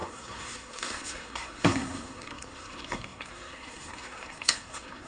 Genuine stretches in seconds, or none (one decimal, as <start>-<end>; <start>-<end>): none